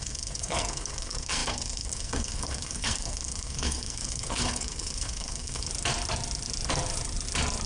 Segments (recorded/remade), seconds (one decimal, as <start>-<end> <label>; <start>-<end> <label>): 0.0-5.7 remade; 5.7-7.7 recorded